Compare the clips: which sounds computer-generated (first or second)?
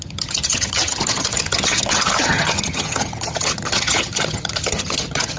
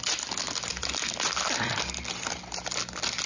first